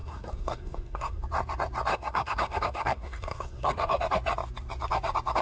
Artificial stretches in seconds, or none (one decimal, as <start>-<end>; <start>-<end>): 0.0-1.2; 1.9-4.0